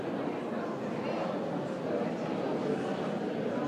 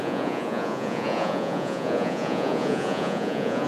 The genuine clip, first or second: first